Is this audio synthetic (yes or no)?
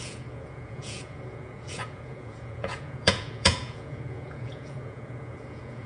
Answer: yes